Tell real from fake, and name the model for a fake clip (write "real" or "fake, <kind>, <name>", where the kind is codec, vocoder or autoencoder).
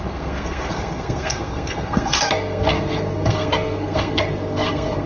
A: fake, codec, SNAC